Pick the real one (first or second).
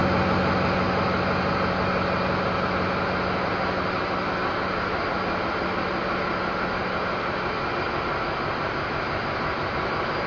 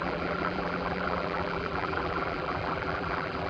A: first